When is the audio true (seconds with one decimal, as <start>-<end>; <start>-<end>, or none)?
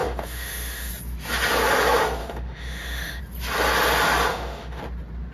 0.9-2.2; 3.2-4.3; 4.8-5.3